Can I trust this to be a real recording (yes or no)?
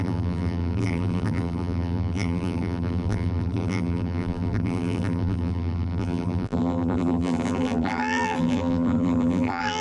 no